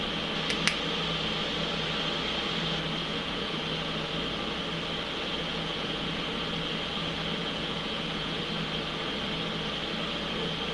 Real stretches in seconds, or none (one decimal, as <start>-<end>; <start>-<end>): 0.0-3.0; 3.6-5.5; 6.2-7.4; 8.4-10.7